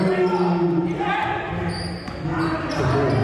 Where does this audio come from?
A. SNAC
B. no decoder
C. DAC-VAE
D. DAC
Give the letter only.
B